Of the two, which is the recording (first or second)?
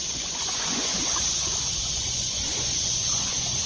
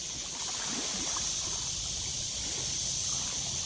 second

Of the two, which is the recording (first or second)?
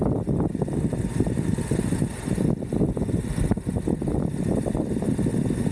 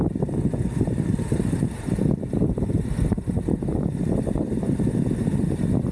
first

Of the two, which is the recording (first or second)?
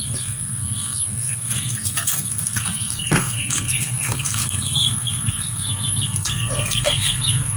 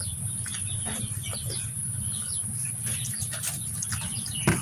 second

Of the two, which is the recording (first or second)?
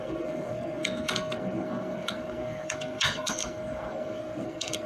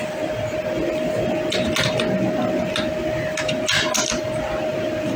second